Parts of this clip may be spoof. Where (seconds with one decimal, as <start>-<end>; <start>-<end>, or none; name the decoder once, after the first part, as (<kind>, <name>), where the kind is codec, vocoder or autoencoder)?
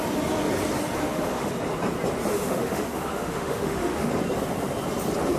1.0-1.5 (autoencoder, DAC-VAE); 2.3-4.1